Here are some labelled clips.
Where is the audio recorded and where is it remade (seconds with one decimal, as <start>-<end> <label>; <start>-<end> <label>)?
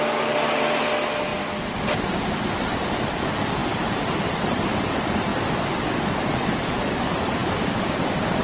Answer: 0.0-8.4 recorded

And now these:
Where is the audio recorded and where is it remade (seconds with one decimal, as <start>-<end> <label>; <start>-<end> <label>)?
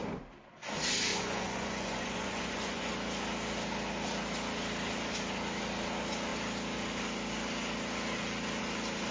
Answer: 0.0-1.1 recorded; 1.1-2.9 remade; 2.9-9.1 recorded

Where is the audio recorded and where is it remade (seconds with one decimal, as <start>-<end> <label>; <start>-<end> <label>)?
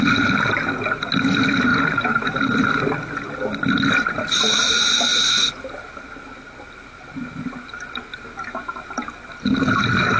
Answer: 0.0-10.2 recorded